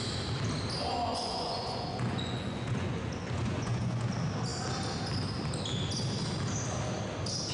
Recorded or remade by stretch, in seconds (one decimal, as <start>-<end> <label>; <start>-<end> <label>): 0.0-1.1 recorded; 1.1-4.1 remade; 4.1-7.5 recorded